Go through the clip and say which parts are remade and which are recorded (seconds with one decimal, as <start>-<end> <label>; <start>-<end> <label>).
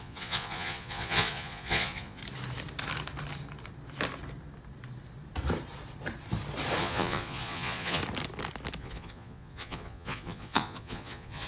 0.0-2.2 remade; 2.2-6.8 recorded; 6.8-8.0 remade; 8.0-8.8 recorded; 8.8-11.5 remade